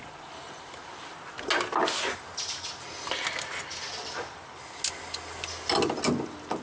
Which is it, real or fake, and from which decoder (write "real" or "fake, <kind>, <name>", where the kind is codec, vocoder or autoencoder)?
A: real